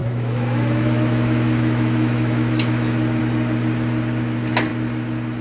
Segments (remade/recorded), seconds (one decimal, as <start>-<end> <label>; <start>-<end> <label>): 0.0-3.2 remade; 3.2-5.4 recorded